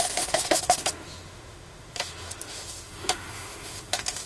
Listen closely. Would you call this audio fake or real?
fake